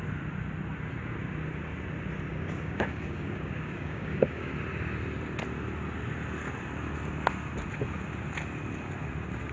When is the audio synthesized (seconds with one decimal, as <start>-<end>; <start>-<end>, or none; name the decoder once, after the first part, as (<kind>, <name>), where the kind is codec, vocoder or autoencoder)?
2.3-4.5 (codec, DAC)